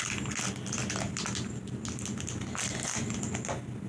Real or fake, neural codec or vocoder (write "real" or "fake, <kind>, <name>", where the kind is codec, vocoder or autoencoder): real